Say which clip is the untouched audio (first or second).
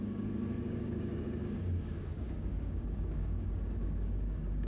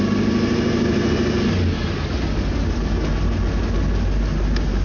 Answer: second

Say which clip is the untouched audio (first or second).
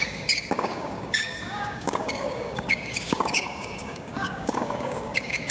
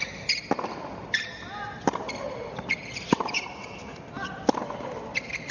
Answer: second